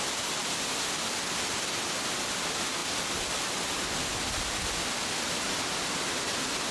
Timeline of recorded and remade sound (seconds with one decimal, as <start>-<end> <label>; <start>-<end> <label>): 0.0-6.7 recorded